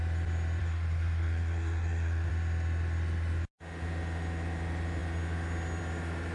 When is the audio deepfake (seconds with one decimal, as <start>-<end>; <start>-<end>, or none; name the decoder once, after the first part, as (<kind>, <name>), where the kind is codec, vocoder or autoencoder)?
0.6-2.3 (codec, SNAC)